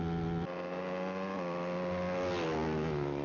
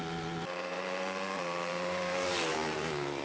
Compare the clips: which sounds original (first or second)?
first